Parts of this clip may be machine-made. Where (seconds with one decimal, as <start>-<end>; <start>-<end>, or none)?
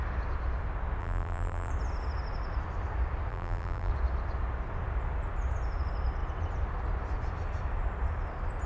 1.0-1.7; 3.3-3.9